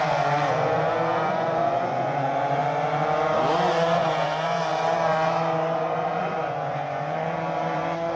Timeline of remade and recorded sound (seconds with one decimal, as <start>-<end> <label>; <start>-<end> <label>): 0.0-2.6 remade; 2.6-3.7 recorded; 3.7-8.2 remade